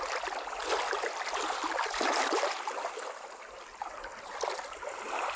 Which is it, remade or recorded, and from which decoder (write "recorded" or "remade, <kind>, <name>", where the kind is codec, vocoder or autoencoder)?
recorded